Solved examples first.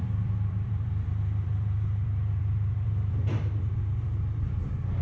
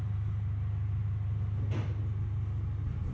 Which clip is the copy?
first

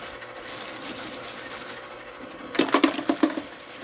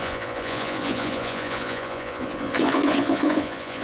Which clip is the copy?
second